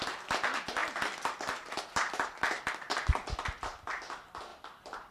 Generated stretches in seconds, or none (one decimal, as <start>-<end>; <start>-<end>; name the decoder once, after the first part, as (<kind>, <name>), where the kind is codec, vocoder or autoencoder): 4.5-5.1 (vocoder, BigVGAN v2)